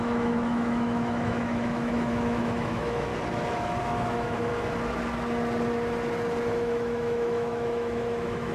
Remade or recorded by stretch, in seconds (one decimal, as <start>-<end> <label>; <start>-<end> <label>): 0.0-3.1 remade; 3.1-3.8 recorded; 3.8-4.5 remade; 4.5-6.5 recorded; 6.5-8.5 remade